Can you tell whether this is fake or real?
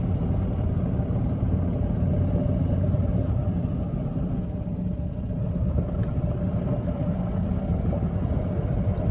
real